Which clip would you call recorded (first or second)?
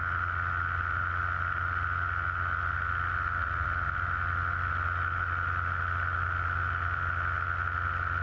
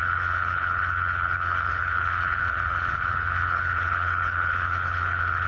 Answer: first